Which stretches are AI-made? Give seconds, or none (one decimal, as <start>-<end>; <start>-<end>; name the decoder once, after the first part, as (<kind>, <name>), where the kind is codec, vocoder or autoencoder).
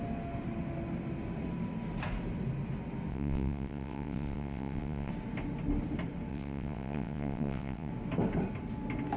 3.1-5.1 (vocoder, WaveNeXt); 6.3-7.9